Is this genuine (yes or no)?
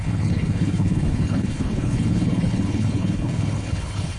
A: no